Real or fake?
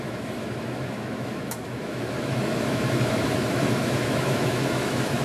fake